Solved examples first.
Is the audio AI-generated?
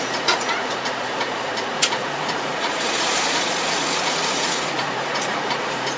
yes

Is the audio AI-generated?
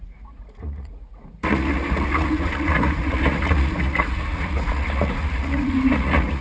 yes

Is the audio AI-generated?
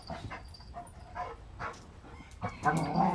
no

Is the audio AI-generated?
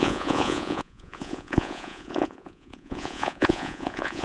yes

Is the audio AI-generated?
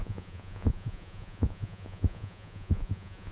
yes